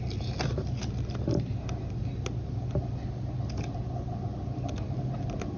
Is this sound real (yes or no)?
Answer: yes